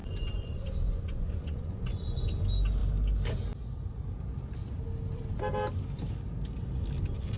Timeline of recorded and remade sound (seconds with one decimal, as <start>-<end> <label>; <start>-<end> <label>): 0.0-2.4 remade; 2.4-7.4 recorded